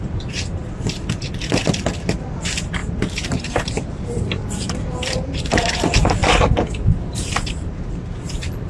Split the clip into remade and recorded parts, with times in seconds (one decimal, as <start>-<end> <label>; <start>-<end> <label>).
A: 0.0-0.6 remade; 0.6-2.0 recorded; 2.0-6.2 remade; 6.2-7.1 recorded; 7.1-8.7 remade